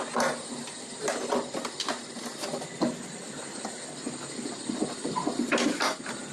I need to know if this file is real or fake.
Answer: real